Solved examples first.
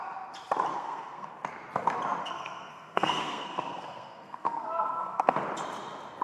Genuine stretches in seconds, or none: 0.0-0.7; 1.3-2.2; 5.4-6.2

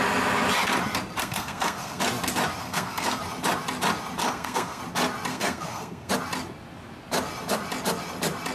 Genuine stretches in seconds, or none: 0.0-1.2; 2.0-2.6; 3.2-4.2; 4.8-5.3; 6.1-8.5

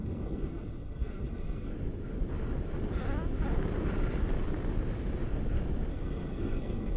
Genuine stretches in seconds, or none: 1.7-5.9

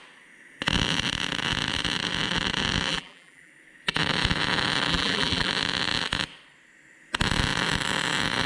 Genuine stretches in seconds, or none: 0.0-2.9; 3.5-4.9; 5.5-8.5